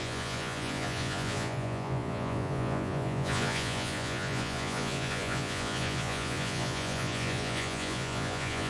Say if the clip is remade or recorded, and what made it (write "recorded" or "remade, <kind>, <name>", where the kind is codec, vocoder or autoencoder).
remade, vocoder, Vocos